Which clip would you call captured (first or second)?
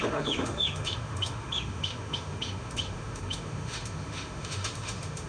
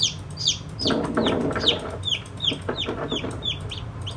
second